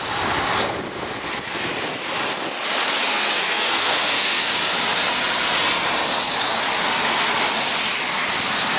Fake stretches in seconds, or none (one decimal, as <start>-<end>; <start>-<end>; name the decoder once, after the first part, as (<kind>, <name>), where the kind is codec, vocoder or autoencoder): 3.1-4.5 (codec, SNAC)